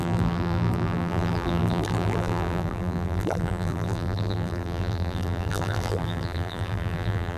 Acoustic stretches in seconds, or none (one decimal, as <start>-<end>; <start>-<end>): none